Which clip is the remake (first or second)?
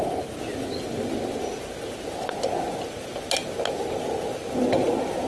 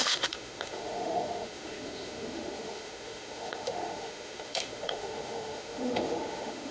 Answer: second